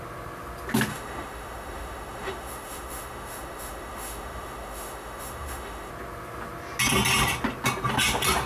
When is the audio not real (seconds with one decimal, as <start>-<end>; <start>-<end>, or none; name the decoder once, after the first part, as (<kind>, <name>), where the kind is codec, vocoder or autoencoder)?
0.9-5.9 (autoencoder, DAC-VAE)